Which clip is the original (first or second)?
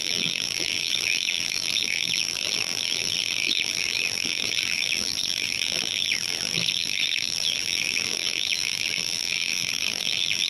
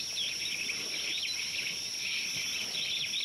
second